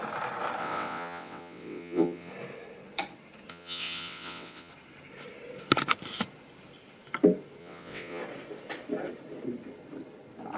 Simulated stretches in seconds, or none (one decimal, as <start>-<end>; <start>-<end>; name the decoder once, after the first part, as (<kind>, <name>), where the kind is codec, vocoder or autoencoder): 0.6-2.3 (vocoder, WaveNeXt); 3.5-4.7; 7.6-8.2